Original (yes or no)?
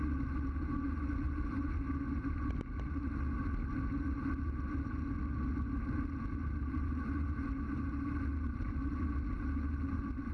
yes